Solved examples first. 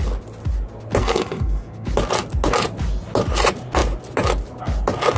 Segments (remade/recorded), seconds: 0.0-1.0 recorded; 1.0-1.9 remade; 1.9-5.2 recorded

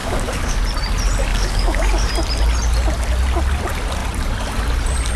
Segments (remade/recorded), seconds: 0.0-0.6 remade; 0.6-1.3 recorded; 1.3-2.1 remade; 2.1-5.2 recorded